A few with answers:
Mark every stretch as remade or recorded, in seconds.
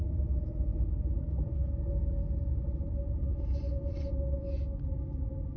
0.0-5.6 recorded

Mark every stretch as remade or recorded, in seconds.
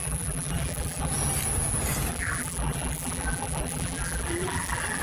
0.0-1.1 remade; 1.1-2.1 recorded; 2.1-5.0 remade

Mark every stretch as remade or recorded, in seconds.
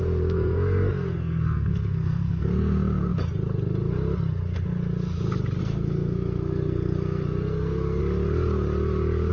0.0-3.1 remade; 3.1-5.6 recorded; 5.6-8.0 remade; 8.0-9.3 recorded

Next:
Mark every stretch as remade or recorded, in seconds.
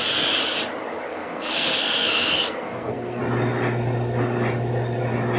0.0-1.1 recorded; 1.1-3.2 remade; 3.2-5.4 recorded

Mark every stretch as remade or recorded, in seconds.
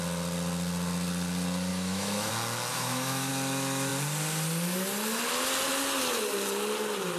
0.0-1.7 recorded; 1.7-2.3 remade; 2.3-2.7 recorded; 2.7-3.3 remade; 3.3-7.2 recorded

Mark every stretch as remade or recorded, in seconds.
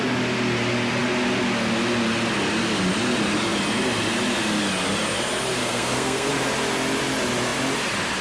0.0-5.6 recorded; 5.6-6.3 remade; 6.3-8.2 recorded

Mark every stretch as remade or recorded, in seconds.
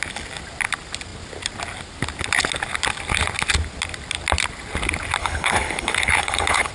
0.0-5.2 recorded; 5.2-6.7 remade